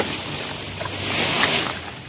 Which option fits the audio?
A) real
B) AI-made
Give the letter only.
A